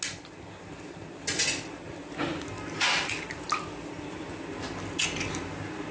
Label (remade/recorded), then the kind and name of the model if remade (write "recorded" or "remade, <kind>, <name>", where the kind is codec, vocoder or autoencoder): recorded